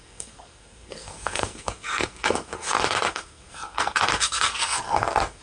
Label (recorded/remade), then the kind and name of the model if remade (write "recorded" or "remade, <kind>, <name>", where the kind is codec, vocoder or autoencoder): remade, codec, SNAC